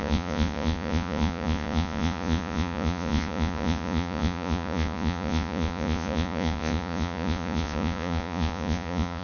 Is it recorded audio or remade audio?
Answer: remade